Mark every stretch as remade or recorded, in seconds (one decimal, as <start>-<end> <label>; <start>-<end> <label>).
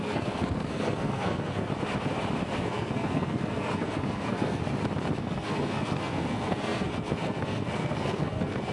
0.0-1.7 remade; 1.7-2.4 recorded; 2.4-4.6 remade; 4.6-5.2 recorded; 5.2-8.7 remade